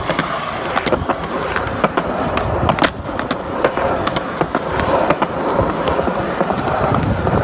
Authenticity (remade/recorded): recorded